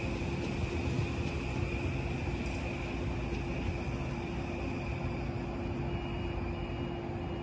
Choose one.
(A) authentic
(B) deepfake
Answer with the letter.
A